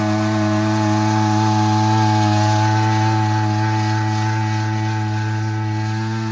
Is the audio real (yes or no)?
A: yes